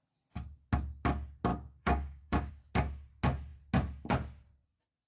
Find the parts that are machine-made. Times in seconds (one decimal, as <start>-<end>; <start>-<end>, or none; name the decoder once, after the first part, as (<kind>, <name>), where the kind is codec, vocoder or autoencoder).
1.5-2.5 (codec, DAC)

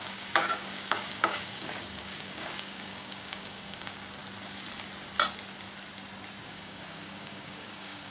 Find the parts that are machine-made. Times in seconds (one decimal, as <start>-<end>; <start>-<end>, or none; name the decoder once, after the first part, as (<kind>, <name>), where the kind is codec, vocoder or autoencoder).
0.0-4.2 (codec, DAC); 6.4-8.1

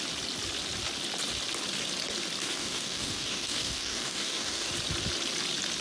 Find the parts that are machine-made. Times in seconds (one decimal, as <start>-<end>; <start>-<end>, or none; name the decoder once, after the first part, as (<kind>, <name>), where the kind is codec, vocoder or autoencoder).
2.4-4.7 (codec, DAC)